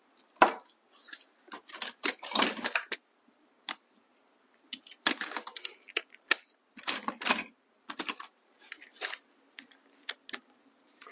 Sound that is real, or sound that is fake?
real